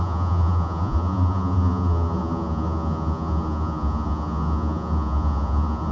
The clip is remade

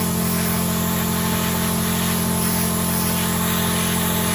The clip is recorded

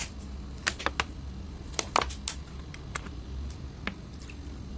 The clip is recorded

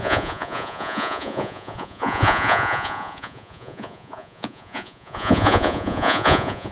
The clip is remade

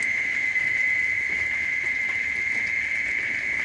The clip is recorded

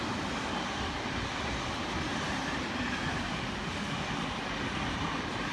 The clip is recorded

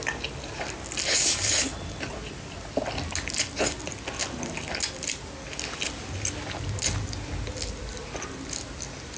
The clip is recorded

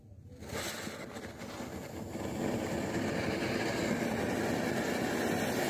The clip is recorded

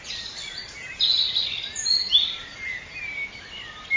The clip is recorded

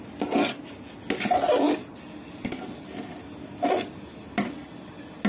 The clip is recorded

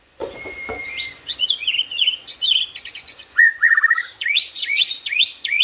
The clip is remade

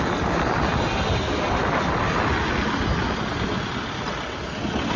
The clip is recorded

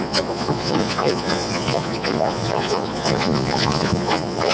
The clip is remade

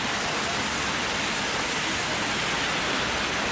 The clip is recorded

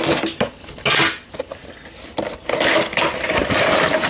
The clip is recorded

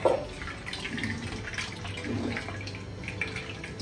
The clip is recorded